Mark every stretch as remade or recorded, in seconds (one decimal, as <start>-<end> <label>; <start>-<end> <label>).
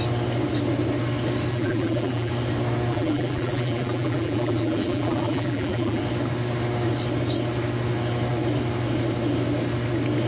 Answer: 0.0-1.5 recorded; 1.5-2.3 remade; 2.3-2.9 recorded; 2.9-6.0 remade; 6.0-10.3 recorded